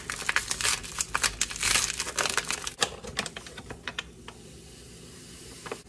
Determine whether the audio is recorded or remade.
recorded